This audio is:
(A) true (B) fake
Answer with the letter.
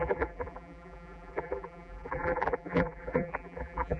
B